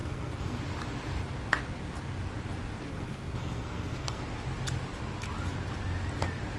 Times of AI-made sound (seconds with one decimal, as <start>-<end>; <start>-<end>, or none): 0.0-0.6; 2.9-4.2